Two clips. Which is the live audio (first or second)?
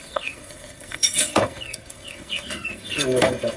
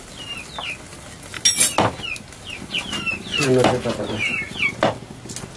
second